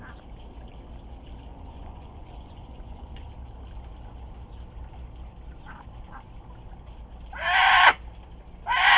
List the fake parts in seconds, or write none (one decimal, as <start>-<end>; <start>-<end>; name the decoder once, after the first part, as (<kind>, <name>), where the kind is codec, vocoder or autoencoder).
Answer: 1.5-3.3 (vocoder, Vocos)